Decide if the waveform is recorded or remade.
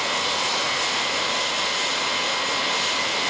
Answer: recorded